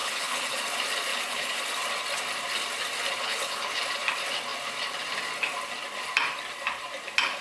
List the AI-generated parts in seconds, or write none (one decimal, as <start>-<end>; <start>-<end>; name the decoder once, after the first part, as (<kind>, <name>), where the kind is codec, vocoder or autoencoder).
0.0-0.6 (codec, HILCodec); 1.1-1.6; 3.2-3.8